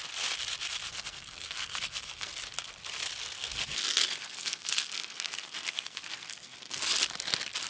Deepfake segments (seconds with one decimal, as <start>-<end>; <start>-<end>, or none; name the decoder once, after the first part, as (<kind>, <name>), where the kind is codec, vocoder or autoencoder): 0.9-2.3 (codec, SNAC); 3.2-6.8